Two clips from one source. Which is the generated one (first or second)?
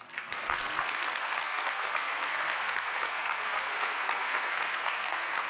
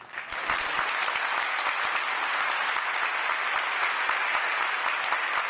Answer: first